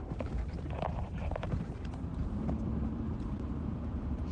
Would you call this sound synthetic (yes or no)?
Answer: yes